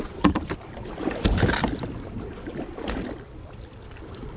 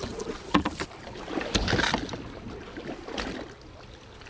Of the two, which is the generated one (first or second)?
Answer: first